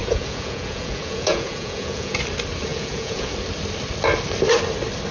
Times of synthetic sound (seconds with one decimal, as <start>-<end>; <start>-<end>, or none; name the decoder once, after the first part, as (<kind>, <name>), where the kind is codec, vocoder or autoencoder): 0.0-2.2 (vocoder, Vocos); 2.7-3.3